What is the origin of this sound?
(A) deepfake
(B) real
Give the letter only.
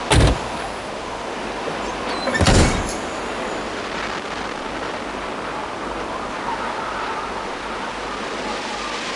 B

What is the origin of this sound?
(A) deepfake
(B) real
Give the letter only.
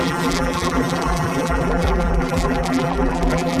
A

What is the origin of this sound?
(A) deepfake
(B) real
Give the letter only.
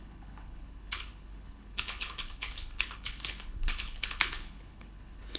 A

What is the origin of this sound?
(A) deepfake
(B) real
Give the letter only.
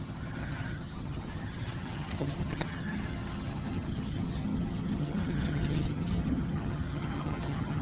A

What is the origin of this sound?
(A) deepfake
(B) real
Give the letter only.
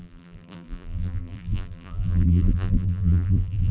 A